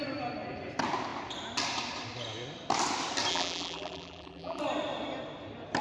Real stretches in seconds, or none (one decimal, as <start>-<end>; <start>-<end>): 0.0-3.3; 4.6-5.8